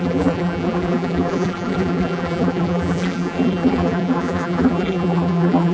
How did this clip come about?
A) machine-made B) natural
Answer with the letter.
A